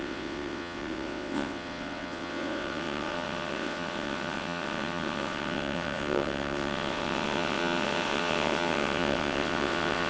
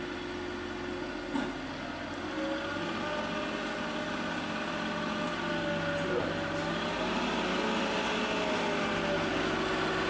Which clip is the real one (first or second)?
second